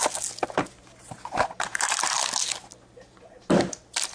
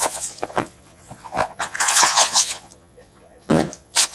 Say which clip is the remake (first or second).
second